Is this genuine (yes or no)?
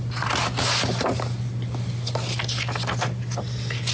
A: yes